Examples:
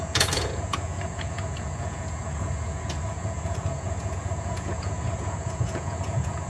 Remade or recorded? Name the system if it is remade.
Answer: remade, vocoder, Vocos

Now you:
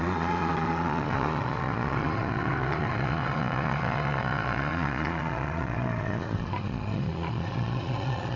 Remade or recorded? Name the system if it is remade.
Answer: remade, vocoder, Vocos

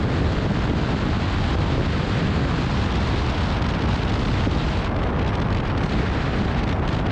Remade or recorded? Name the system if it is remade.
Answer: recorded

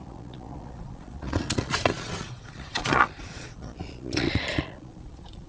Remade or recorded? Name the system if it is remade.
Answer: remade, vocoder, Vocos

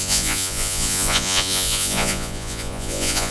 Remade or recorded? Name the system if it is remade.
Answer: remade, vocoder, Vocos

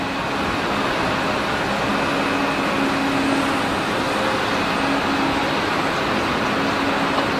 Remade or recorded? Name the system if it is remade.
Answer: recorded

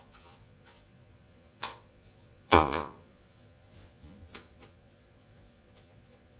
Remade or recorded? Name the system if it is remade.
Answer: remade, vocoder, Vocos